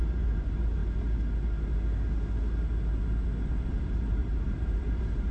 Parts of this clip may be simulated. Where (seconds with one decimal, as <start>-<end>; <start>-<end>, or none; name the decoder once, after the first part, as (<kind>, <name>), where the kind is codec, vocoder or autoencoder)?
0.0-0.8 (vocoder, BigVGAN v2); 3.7-5.3